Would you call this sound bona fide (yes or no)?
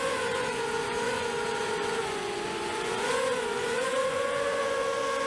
no